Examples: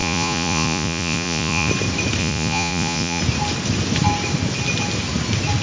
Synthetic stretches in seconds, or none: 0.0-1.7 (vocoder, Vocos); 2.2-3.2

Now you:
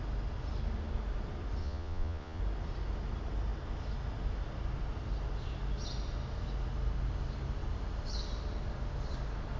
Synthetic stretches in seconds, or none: 1.6-2.4 (vocoder, Vocos)

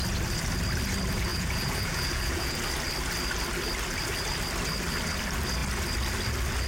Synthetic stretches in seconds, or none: 1.3-2.6 (vocoder, Vocos)

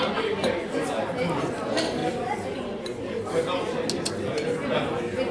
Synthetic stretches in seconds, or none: none

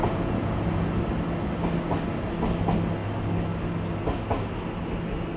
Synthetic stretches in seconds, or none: 0.0-1.0 (vocoder, Vocos)